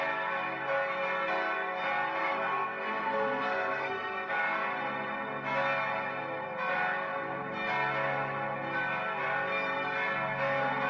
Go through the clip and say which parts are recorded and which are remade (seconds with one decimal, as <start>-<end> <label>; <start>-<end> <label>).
0.0-2.2 recorded; 2.2-4.3 remade; 4.3-10.9 recorded